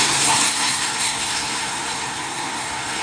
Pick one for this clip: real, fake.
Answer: fake